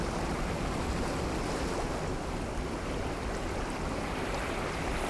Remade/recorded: recorded